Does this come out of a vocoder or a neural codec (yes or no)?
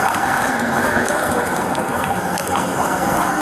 yes